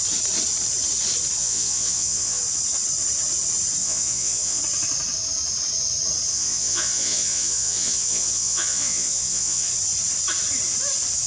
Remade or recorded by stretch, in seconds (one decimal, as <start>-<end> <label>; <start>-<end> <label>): 0.0-1.4 recorded; 1.4-2.4 remade; 2.4-3.8 recorded; 3.8-4.6 remade; 4.6-6.3 recorded; 6.3-9.7 remade; 9.7-11.3 recorded